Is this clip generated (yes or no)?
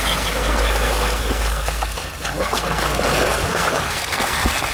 yes